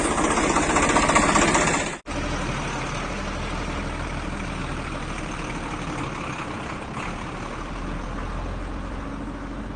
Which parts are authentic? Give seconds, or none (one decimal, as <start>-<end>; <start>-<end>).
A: 0.0-4.6; 7.8-9.8